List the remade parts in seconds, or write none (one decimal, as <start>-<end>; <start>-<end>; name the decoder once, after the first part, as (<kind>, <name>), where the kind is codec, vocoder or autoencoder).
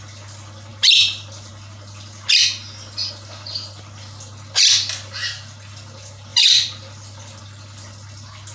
0.7-1.5 (vocoder, BigVGAN v2); 6.3-7.4